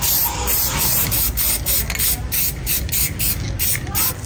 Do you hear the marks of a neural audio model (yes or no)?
no